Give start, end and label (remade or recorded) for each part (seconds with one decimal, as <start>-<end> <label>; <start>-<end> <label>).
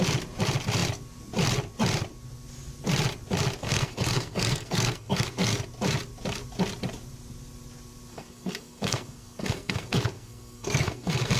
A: 0.0-3.6 recorded; 3.6-5.5 remade; 5.5-8.1 recorded; 8.1-11.4 remade